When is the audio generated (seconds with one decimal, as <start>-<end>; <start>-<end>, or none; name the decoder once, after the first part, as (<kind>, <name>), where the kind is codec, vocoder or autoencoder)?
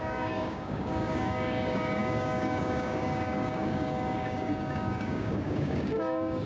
0.0-6.5 (codec, DAC)